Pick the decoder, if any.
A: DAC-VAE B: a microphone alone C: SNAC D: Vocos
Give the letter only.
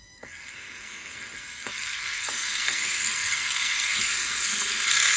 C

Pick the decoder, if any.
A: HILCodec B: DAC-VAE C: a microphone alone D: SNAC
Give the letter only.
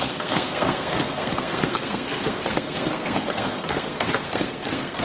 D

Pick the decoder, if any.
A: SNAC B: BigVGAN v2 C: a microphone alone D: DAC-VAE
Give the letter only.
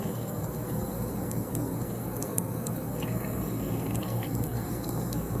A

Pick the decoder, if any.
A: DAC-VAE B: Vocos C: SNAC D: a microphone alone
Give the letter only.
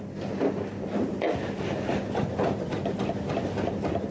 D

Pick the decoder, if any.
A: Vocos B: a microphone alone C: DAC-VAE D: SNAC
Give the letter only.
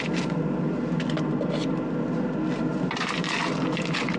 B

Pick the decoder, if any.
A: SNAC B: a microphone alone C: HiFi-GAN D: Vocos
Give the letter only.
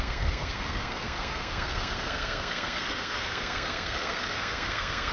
A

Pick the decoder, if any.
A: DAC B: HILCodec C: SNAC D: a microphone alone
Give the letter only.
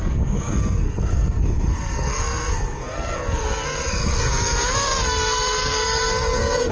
C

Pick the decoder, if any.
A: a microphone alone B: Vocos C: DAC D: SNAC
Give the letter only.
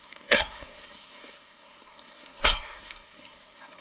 D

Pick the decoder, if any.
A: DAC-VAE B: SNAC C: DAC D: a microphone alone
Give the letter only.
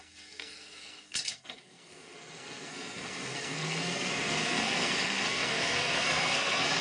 B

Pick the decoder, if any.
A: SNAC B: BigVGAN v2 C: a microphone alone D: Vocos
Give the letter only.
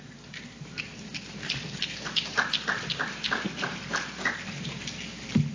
C